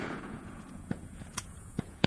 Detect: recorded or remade remade